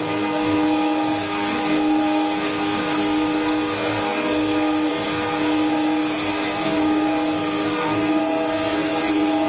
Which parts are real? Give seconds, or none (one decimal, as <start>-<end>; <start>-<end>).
none